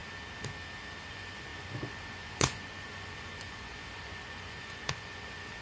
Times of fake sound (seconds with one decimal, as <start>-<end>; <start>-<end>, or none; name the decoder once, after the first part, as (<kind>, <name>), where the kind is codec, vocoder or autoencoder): 1.1-5.6 (vocoder, Vocos)